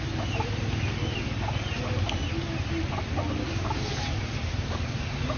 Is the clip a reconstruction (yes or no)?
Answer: no